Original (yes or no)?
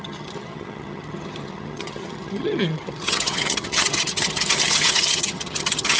no